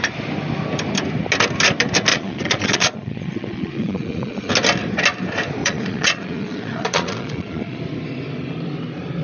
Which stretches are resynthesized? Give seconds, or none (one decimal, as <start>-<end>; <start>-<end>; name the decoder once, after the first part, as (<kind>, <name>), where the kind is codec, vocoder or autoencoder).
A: 2.1-4.5 (vocoder, Vocos); 5.6-7.8